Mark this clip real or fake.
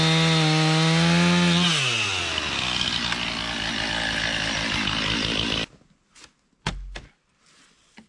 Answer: real